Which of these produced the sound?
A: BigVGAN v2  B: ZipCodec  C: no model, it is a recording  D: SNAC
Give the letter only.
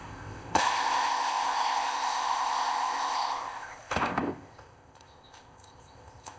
B